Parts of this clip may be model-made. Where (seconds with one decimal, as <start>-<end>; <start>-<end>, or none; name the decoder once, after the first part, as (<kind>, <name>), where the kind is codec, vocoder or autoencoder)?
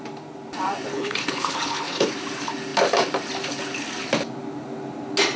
0.9-2.1 (codec, HILCodec)